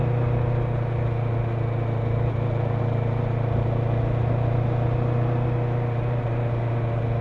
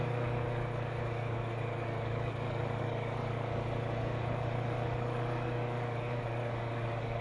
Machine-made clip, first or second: second